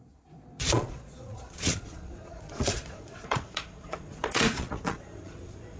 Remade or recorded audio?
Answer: remade